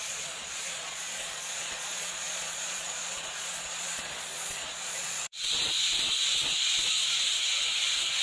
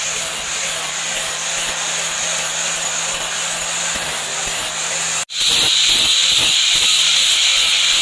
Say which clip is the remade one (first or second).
first